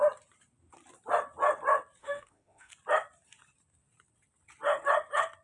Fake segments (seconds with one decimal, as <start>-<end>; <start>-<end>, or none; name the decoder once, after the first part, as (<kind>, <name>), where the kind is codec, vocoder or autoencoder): 2.0-2.7 (autoencoder, DAC-VAE)